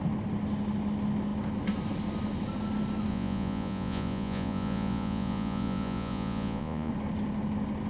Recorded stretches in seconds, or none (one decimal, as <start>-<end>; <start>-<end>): 0.0-3.1; 6.9-7.9